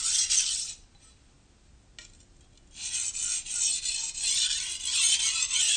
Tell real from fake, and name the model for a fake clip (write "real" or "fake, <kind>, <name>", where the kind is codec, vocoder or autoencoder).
real